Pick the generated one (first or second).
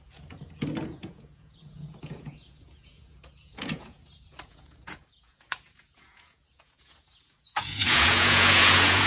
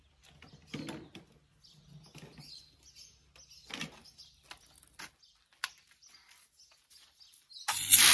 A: first